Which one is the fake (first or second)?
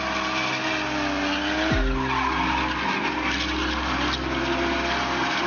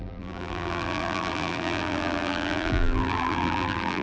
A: second